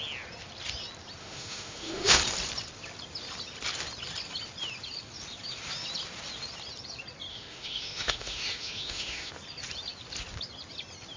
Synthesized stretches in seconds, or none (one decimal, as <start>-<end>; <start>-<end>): 1.2-2.2; 7.3-9.3